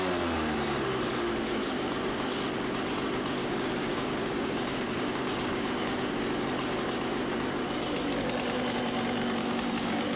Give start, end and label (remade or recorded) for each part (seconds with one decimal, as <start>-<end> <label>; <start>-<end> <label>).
0.0-1.5 recorded; 1.5-2.4 remade; 2.4-3.4 recorded; 3.4-6.1 remade; 6.1-9.4 recorded; 9.4-10.2 remade